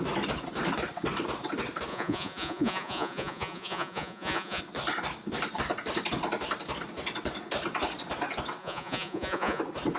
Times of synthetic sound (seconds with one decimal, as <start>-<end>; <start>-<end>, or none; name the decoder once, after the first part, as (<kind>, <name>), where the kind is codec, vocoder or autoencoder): 1.9-4.6 (vocoder, Vocos); 8.6-9.6